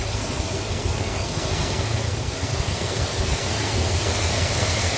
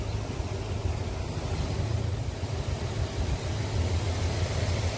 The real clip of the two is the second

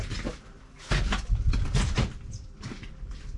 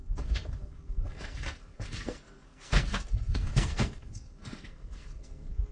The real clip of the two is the first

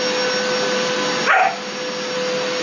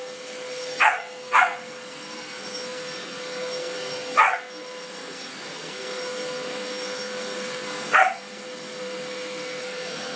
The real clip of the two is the first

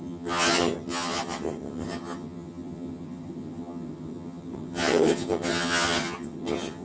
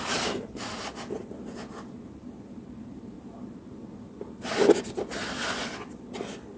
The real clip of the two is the second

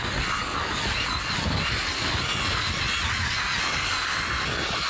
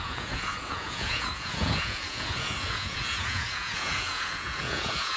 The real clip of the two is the first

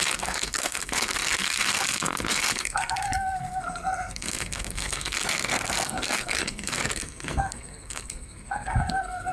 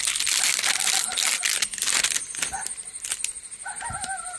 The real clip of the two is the second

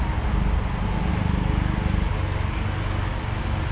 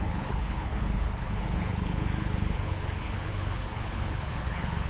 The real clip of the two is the first